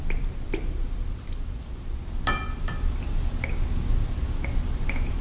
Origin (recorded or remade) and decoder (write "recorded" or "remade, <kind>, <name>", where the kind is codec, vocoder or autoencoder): recorded